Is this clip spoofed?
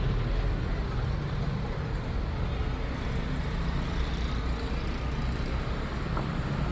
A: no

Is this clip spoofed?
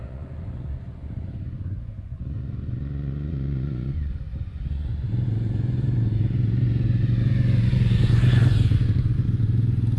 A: yes